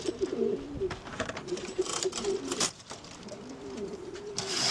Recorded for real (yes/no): no